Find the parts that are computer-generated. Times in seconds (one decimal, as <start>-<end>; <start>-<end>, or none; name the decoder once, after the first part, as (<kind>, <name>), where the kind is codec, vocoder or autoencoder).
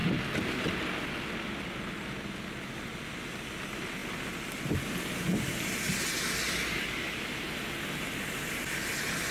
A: none